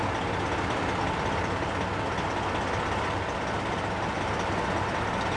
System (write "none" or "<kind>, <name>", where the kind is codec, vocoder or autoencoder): none